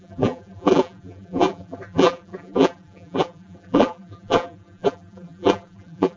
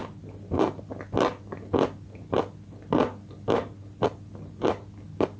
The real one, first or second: second